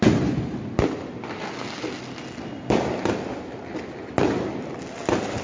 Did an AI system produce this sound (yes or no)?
no